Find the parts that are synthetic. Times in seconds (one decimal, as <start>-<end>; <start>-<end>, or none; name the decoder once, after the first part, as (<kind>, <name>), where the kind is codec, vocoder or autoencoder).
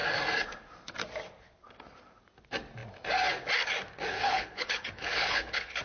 4.1-5.8 (codec, HILCodec)